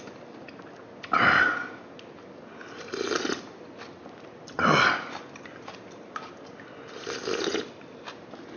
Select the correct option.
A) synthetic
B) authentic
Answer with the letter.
B